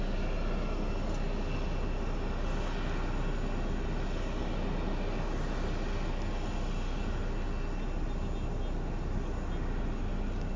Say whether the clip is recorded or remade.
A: recorded